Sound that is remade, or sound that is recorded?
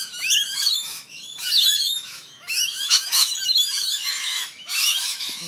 remade